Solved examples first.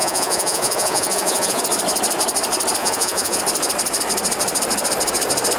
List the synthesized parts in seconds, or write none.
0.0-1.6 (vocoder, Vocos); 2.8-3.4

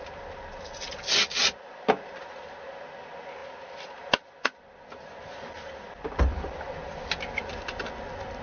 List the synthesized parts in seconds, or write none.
none

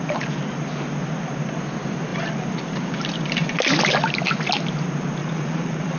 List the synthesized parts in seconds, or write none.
5.2-6.0 (vocoder, Vocos)